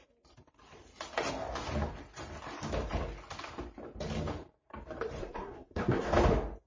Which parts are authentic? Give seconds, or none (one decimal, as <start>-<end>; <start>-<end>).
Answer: 0.0-5.2; 6.1-6.7